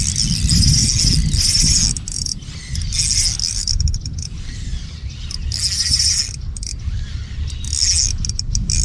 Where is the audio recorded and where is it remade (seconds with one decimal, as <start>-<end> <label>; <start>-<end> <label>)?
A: 0.0-8.8 recorded